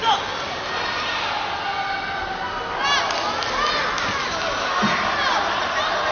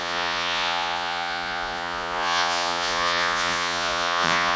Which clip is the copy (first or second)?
second